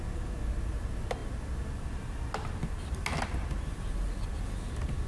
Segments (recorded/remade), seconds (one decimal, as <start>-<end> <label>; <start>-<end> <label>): 0.0-5.1 recorded